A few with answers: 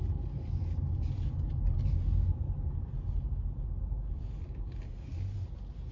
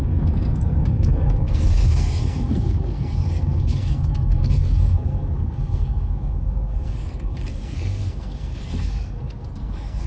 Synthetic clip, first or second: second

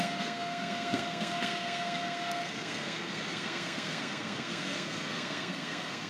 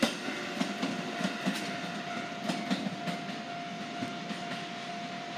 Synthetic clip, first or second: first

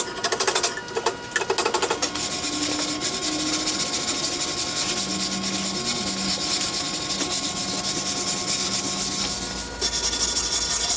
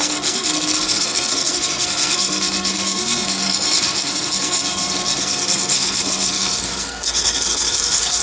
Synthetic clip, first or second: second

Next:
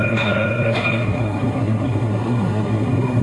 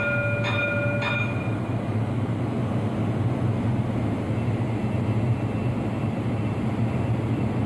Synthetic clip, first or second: first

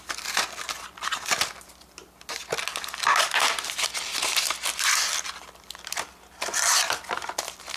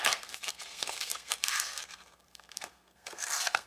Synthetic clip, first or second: second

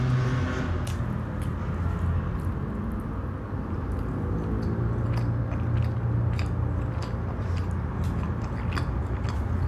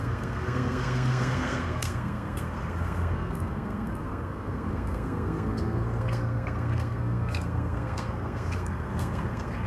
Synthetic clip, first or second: second